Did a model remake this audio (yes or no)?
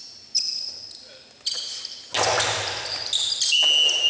no